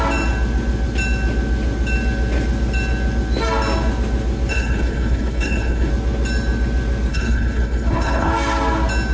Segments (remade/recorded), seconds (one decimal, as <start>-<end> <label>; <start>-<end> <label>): 0.0-4.5 recorded; 4.5-5.9 remade; 5.9-7.1 recorded; 7.1-8.3 remade; 8.3-9.1 recorded